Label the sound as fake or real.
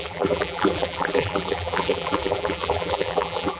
fake